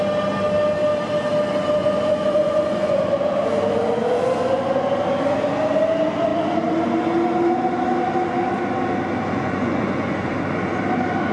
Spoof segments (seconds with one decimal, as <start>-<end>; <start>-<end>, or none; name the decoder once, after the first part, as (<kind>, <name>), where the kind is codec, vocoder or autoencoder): 1.8-3.1 (vocoder, Vocos); 9.3-10.3